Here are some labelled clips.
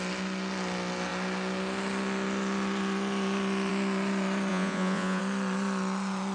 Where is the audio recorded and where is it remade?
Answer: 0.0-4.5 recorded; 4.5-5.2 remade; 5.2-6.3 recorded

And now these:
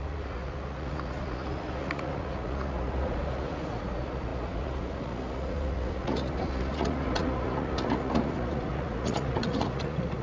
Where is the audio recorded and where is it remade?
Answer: 0.0-10.2 remade

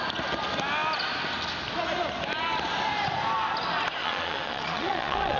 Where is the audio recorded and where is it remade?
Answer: 0.0-4.0 recorded; 4.0-5.4 remade

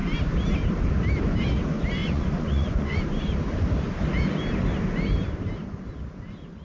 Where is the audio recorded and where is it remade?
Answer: 0.0-2.0 recorded; 2.0-3.0 remade; 3.0-6.6 recorded

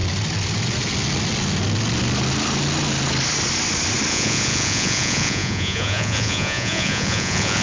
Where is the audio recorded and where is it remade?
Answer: 0.0-4.1 recorded; 4.1-7.6 remade

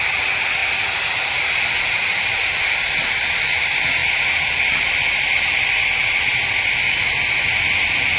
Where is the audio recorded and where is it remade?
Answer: 0.0-8.2 recorded